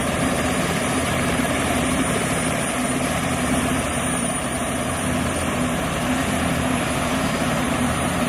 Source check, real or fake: fake